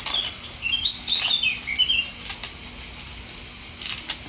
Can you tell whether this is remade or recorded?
recorded